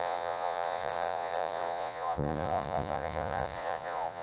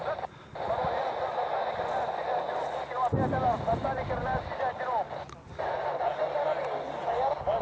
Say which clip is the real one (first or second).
second